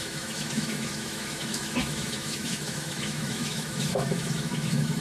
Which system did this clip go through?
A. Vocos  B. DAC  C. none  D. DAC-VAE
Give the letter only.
D